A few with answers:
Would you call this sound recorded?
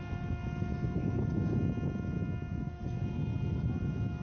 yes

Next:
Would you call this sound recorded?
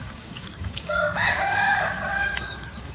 no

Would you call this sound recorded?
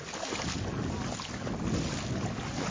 yes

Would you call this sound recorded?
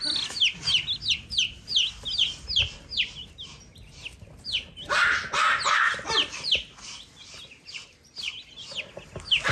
yes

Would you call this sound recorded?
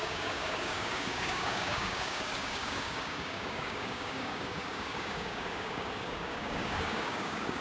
no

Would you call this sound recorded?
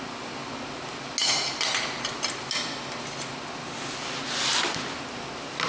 yes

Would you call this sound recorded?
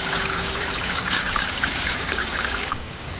no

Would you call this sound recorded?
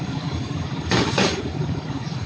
no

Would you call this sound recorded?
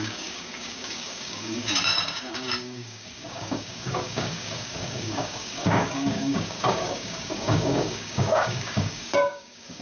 no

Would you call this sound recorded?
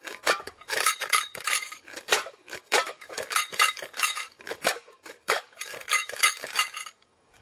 no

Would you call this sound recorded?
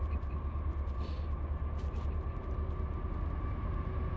yes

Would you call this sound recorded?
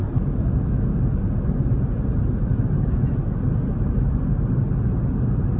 yes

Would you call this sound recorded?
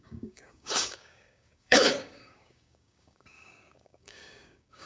no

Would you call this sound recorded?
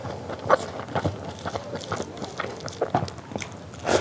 yes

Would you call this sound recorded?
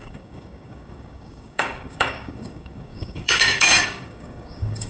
no